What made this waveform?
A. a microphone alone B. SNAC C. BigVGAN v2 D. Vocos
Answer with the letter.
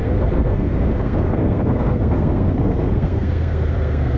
B